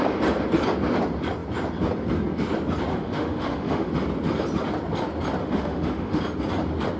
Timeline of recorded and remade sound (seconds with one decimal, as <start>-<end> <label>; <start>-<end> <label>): 0.0-2.9 recorded; 2.9-3.9 remade; 3.9-5.4 recorded; 5.4-6.2 remade; 6.2-7.0 recorded